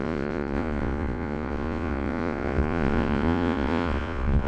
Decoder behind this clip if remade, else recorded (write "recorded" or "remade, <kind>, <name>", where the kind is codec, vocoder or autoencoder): remade, vocoder, Vocos